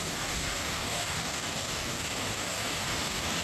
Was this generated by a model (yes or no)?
yes